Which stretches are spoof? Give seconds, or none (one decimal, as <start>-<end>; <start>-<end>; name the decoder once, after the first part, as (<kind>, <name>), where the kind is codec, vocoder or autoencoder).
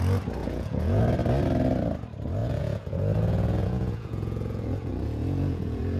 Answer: 0.4-1.0 (vocoder, Vocos); 2.4-6.0